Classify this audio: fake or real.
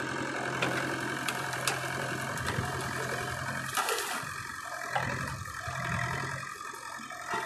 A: fake